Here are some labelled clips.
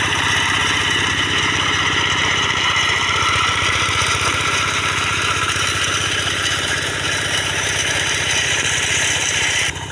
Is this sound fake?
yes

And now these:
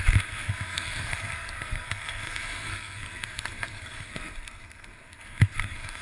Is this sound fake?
yes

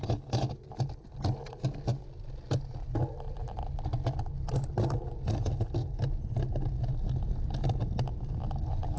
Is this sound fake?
no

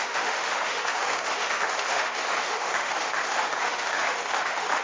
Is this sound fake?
yes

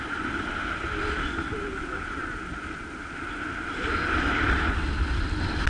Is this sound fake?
no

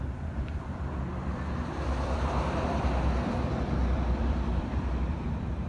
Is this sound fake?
yes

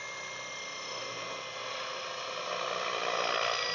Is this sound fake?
no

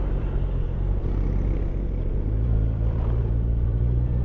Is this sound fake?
yes